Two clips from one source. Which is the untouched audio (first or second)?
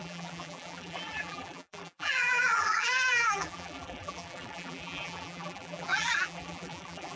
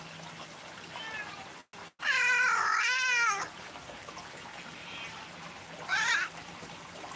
second